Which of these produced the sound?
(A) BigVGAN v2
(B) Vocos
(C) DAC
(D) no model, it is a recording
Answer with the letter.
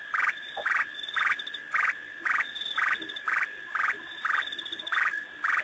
D